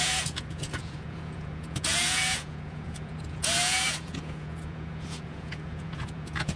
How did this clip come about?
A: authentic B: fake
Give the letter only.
B